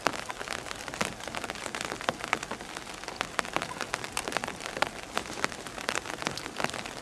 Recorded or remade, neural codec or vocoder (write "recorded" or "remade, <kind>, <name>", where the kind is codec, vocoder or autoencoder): recorded